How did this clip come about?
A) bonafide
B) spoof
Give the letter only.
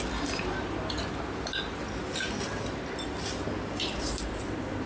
A